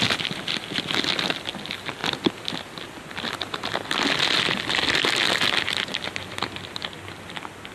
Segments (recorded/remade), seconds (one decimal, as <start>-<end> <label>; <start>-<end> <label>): 0.0-7.7 recorded